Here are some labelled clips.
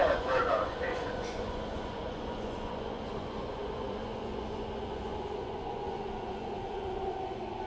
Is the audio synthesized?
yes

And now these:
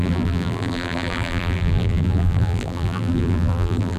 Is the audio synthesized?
yes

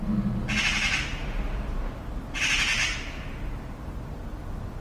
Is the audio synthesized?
no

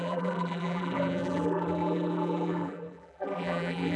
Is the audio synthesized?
yes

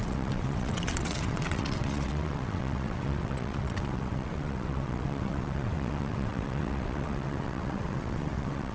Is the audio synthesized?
yes